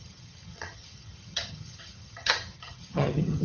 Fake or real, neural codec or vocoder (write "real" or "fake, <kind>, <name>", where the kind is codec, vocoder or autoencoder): fake, vocoder, HiFi-GAN